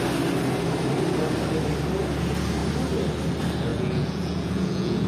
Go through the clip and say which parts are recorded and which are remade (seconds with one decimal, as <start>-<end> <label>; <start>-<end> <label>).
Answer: 0.0-3.7 recorded; 3.7-5.1 remade